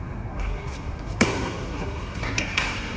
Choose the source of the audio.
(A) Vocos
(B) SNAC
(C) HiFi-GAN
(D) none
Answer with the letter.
B